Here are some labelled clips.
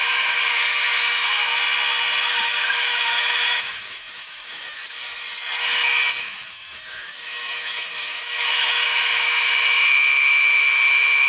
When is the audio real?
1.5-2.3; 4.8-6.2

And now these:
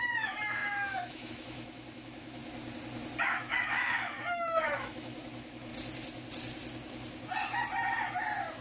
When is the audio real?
2.4-3.2; 5.7-8.6